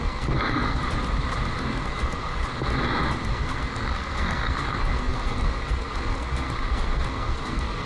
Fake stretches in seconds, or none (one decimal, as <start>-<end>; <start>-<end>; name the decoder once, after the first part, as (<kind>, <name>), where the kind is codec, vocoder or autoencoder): 0.0-0.8 (codec, SNAC); 1.6-2.4; 3.3-7.9